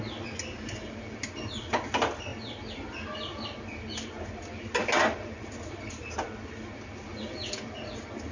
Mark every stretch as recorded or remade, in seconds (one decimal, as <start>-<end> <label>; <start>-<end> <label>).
0.0-8.3 recorded